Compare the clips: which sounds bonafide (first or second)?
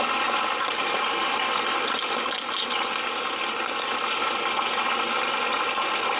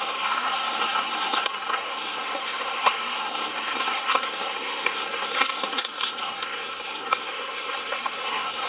first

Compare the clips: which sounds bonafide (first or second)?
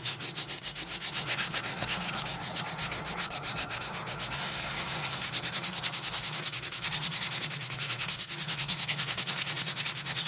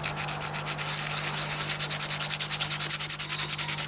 second